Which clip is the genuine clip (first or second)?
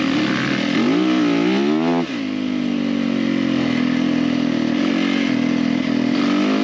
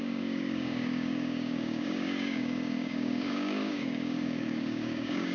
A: first